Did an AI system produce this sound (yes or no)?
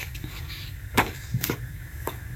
yes